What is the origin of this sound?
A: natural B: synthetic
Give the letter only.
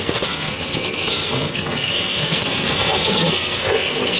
B